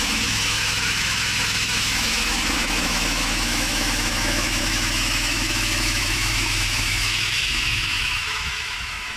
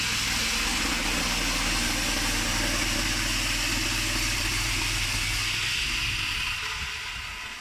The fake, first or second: first